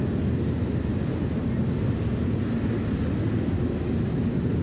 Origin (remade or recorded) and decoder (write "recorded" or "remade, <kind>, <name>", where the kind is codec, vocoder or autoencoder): recorded